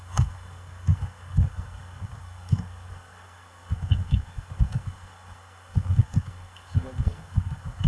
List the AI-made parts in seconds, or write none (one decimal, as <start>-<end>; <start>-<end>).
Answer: 0.0-7.9